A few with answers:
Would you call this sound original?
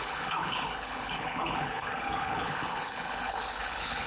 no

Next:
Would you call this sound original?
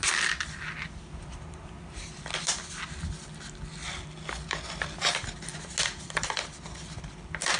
yes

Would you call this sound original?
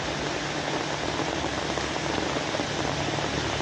yes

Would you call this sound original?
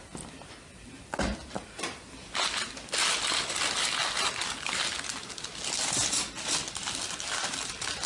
yes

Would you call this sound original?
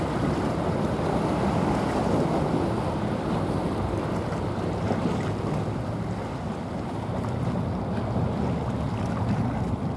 yes